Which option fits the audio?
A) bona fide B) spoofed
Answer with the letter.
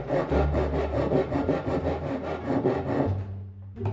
A